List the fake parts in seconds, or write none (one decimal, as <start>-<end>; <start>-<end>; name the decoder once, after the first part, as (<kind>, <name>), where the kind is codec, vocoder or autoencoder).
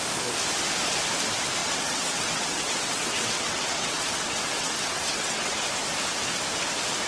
1.6-5.7 (vocoder, WaveNeXt)